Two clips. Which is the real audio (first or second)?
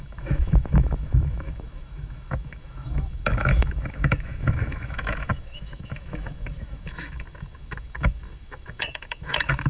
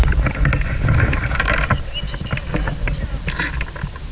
second